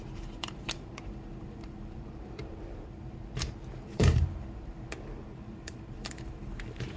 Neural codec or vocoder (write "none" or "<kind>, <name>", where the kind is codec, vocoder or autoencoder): vocoder, BigVGAN v2